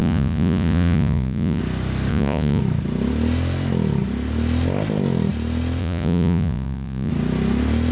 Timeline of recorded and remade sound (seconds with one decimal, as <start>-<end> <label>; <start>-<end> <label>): 0.0-1.6 remade; 1.6-2.1 recorded; 2.1-2.6 remade; 2.6-5.8 recorded; 5.8-7.1 remade; 7.1-7.9 recorded